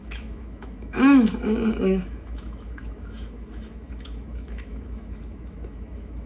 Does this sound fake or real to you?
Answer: fake